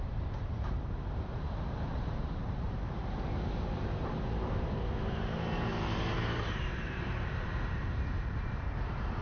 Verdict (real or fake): fake